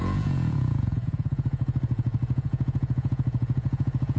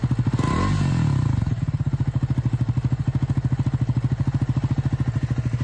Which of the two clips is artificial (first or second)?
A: first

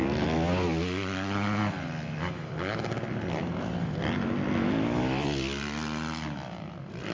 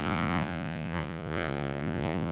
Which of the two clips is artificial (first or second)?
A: second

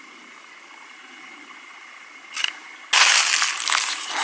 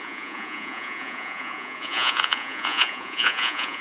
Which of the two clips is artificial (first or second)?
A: second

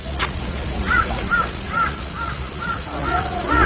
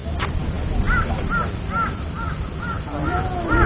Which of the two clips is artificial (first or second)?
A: first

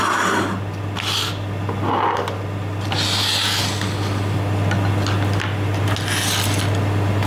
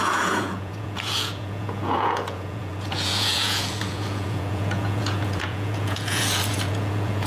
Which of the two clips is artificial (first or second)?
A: second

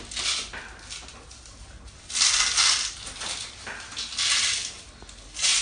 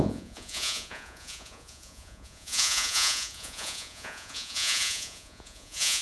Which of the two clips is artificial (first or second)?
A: second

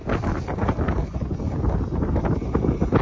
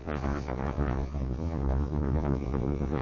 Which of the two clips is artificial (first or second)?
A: second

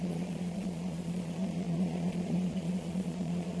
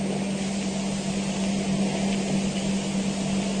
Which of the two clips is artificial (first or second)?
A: first